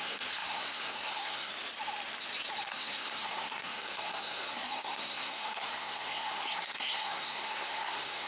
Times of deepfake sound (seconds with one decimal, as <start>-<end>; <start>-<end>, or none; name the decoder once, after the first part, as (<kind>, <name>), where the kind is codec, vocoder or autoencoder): 0.0-1.5 (codec, SNAC); 2.7-8.3